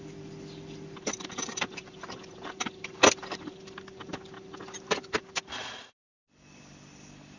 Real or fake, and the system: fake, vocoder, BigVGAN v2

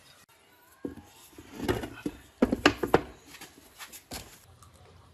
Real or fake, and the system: real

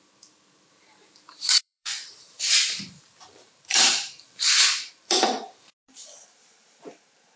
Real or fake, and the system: fake, vocoder, BigVGAN v2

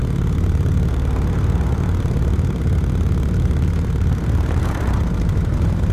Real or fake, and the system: fake, vocoder, BigVGAN v2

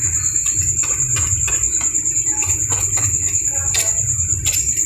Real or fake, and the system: fake, vocoder, BigVGAN v2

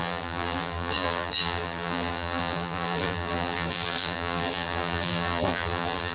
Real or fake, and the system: fake, vocoder, BigVGAN v2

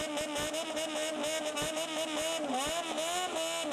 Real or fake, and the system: real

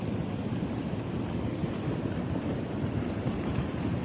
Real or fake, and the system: fake, vocoder, BigVGAN v2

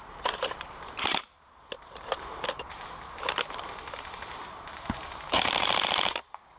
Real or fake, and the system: fake, vocoder, BigVGAN v2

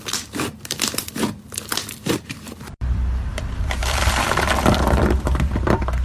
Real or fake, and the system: fake, vocoder, BigVGAN v2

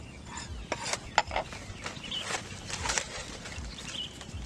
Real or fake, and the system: real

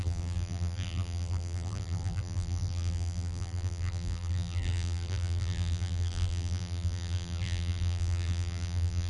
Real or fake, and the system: fake, vocoder, BigVGAN v2